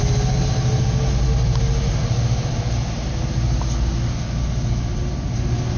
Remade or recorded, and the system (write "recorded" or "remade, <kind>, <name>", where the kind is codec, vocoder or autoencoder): recorded